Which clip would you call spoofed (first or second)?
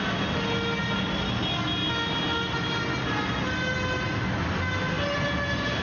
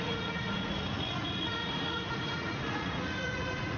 second